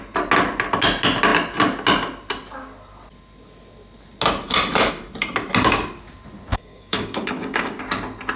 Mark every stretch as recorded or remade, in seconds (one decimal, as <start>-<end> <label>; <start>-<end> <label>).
0.0-6.5 recorded; 6.5-7.8 remade; 7.8-8.4 recorded